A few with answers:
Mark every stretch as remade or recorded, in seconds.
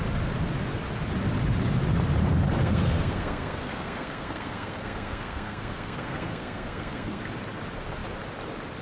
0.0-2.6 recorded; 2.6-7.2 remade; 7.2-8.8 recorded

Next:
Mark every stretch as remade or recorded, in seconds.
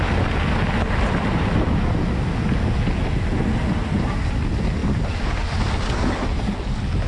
0.0-7.1 recorded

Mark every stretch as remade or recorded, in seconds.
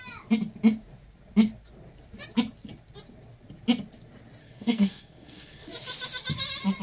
0.0-4.4 recorded; 4.4-5.7 remade; 5.7-6.8 recorded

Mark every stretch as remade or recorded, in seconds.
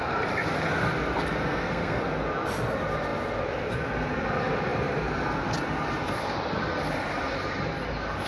0.0-1.4 recorded; 1.4-2.0 remade; 2.0-8.3 recorded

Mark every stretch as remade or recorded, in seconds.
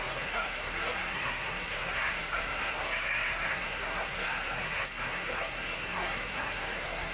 0.0-7.1 remade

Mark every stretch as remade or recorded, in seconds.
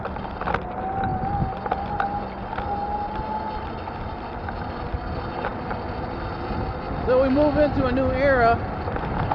0.0-9.3 recorded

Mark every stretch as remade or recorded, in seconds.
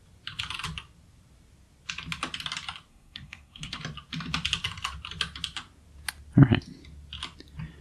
0.0-2.9 recorded; 2.9-3.8 remade; 3.8-7.8 recorded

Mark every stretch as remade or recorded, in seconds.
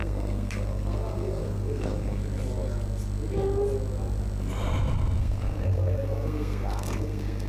0.0-2.2 remade; 2.2-5.2 recorded; 5.2-7.5 remade